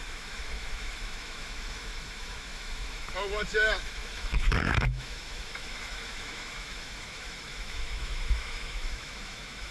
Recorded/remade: remade